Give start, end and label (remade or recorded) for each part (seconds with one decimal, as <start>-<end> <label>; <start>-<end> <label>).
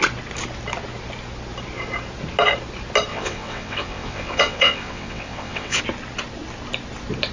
0.0-3.1 recorded; 3.1-5.8 remade; 5.8-7.3 recorded